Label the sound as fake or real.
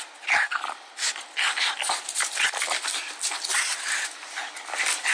real